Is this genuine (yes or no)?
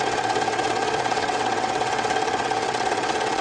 no